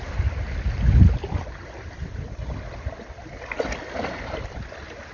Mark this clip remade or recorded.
recorded